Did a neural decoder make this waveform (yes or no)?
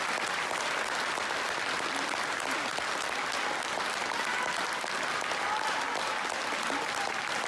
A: no